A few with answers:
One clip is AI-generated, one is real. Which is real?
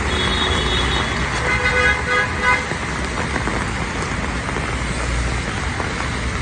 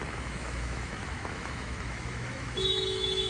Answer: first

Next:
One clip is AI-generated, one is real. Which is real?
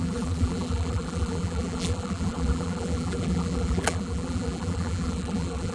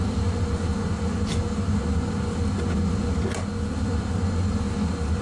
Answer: second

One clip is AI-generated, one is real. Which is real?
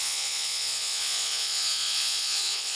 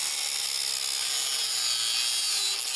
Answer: second